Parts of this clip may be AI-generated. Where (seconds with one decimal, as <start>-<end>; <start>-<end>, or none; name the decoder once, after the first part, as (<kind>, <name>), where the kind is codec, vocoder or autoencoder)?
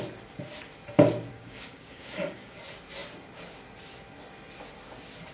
1.3-2.6 (codec, DAC)